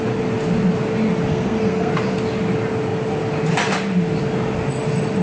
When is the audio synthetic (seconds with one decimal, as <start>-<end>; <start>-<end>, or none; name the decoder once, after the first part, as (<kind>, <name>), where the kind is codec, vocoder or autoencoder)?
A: 1.3-1.9 (codec, SNAC)